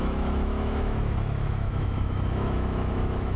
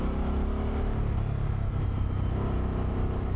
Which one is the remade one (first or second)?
first